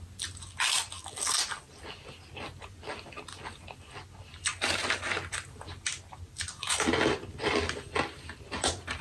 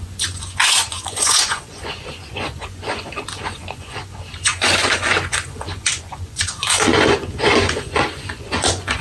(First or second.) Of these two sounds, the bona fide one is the first